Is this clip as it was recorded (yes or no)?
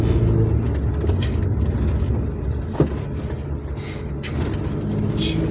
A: yes